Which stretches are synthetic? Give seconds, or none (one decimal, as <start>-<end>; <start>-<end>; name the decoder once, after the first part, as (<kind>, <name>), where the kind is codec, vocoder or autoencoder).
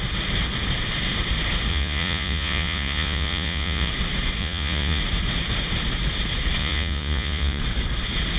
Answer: 1.7-3.9 (vocoder, Vocos); 4.4-5.0; 6.6-7.6